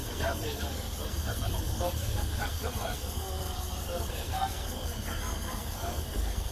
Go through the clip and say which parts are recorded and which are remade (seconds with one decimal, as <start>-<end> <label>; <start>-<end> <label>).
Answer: 0.0-6.5 remade